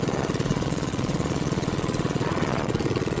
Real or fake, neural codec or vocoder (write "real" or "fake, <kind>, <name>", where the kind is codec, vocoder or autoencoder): fake, vocoder, Vocos